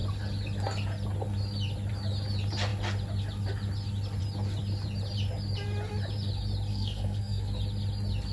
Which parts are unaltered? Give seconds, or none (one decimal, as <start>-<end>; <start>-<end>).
0.0-6.7; 7.5-8.3